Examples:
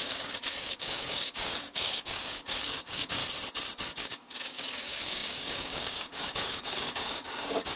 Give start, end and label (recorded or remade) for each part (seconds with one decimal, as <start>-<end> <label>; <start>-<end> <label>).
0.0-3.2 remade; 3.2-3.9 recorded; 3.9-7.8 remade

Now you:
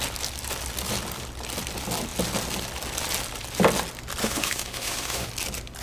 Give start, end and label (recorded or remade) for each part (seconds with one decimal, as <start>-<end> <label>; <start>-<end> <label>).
0.0-4.2 recorded; 4.2-5.3 remade; 5.3-5.8 recorded

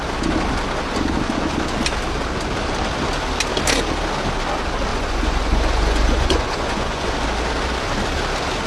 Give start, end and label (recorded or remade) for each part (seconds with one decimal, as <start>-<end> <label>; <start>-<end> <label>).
0.0-4.9 recorded; 4.9-7.1 remade; 7.1-8.7 recorded

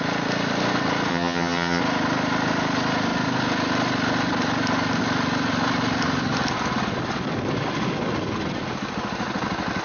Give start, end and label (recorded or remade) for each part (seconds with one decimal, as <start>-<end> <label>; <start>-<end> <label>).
0.0-1.1 recorded; 1.1-1.8 remade; 1.8-9.8 recorded

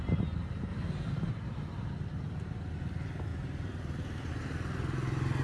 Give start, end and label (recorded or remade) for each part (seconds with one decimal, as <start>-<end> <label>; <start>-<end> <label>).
0.0-5.4 recorded

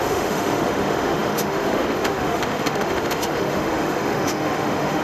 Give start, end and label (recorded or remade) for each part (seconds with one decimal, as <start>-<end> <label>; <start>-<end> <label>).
0.0-5.0 remade

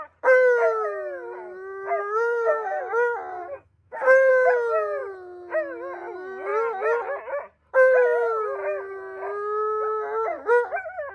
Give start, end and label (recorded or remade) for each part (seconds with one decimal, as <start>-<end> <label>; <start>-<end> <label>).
0.0-2.0 recorded; 2.0-2.8 remade; 2.8-3.3 recorded; 3.3-4.3 remade; 4.3-11.1 recorded

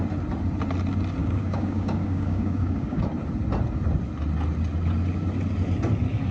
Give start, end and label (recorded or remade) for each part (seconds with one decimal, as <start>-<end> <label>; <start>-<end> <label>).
0.0-1.2 recorded; 1.2-3.0 remade; 3.0-6.3 recorded